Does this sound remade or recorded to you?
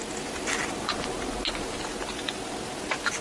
recorded